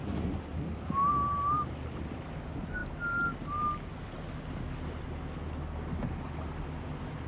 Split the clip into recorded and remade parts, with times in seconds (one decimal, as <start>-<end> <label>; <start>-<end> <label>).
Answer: 0.0-7.3 recorded